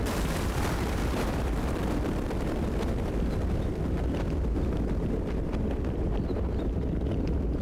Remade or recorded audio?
remade